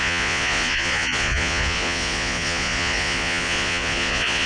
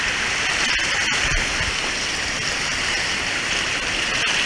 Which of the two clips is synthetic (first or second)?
first